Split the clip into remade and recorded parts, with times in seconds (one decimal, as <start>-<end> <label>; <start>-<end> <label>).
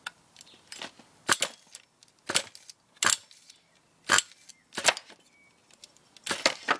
0.0-6.8 recorded